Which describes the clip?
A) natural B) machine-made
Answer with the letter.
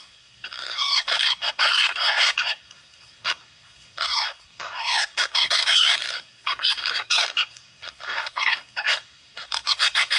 B